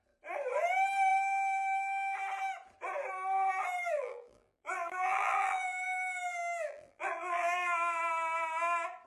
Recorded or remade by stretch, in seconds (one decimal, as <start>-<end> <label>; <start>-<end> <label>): 0.0-3.8 recorded; 3.8-8.0 remade; 8.0-9.1 recorded